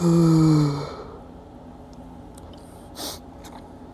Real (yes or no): yes